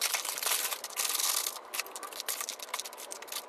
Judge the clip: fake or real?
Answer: real